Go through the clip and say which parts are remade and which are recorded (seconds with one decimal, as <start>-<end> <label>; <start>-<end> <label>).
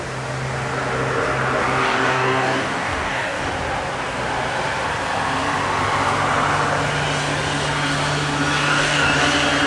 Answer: 0.0-1.8 recorded; 1.8-3.5 remade; 3.5-8.7 recorded; 8.7-9.2 remade; 9.2-9.7 recorded